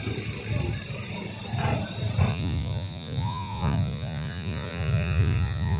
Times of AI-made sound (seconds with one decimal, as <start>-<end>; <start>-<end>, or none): 2.3-5.8